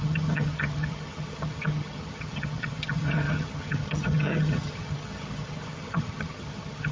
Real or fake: fake